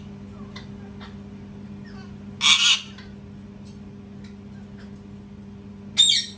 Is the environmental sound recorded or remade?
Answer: recorded